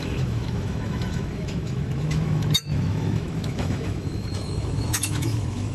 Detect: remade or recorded remade